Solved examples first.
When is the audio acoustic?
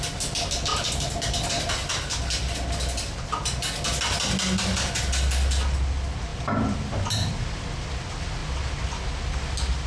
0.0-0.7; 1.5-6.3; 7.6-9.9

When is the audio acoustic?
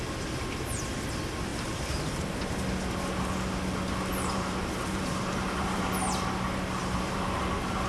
0.0-1.5; 2.4-4.1; 5.8-6.8; 7.4-7.9